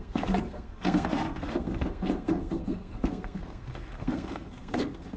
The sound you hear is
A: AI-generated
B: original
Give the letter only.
A